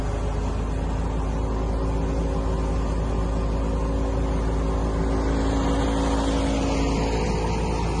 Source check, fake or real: real